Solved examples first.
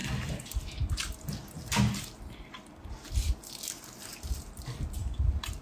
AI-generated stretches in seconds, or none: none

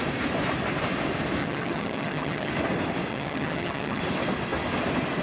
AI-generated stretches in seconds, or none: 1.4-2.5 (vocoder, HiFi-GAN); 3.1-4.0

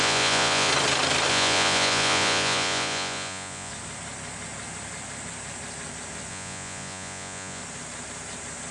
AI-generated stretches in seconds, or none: 0.0-0.7 (vocoder, Vocos); 1.3-3.7; 6.3-7.6

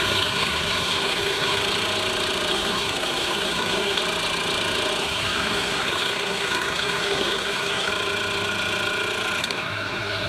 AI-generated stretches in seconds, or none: 0.0-1.6 (codec, SNAC); 2.5-4.0; 5.0-7.9; 9.4-10.3

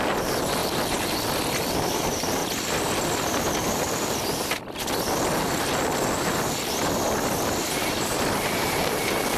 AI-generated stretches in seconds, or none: 0.0-0.6 (vocoder, BigVGAN v2); 1.9-2.4; 7.6-9.4

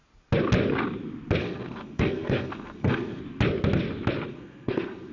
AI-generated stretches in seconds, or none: 1.4-3.2 (codec, SNAC); 4.3-5.1